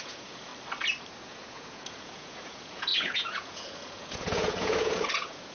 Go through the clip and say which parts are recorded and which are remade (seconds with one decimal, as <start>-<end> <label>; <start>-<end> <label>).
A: 0.0-0.5 remade; 0.5-1.2 recorded; 1.2-5.5 remade